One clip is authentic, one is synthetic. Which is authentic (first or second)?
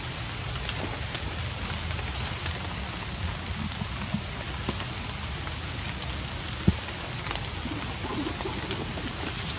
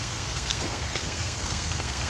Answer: first